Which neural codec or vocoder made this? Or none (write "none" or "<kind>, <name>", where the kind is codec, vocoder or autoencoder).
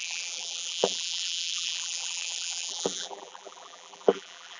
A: vocoder, BigVGAN v2